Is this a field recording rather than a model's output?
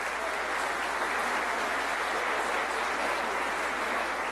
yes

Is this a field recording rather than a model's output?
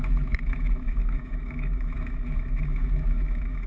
no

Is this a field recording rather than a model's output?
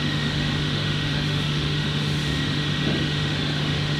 no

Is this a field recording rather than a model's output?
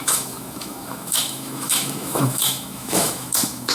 no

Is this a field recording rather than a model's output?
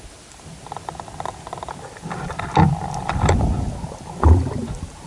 yes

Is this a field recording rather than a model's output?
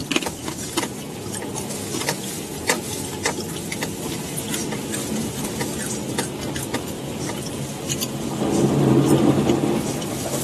yes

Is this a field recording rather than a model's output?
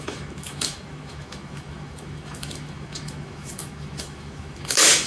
no